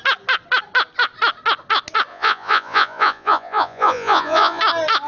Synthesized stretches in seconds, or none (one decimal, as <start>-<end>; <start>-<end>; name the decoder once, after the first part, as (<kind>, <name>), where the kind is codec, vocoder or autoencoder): 2.1-4.6 (vocoder, Vocos)